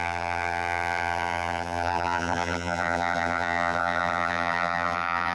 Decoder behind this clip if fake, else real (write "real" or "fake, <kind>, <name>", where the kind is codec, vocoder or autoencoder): fake, vocoder, BigVGAN v2